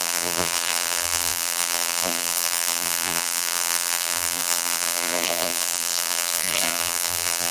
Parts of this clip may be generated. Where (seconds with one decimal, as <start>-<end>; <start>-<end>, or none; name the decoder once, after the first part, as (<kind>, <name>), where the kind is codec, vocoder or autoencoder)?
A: 0.0-7.5 (vocoder, BigVGAN v2)